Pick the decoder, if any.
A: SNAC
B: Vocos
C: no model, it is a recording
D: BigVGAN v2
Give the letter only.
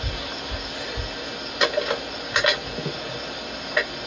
C